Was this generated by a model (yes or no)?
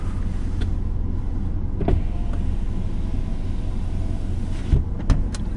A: no